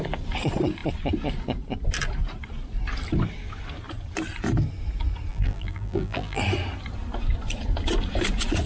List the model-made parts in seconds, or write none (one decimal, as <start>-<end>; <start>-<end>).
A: 5.3-6.4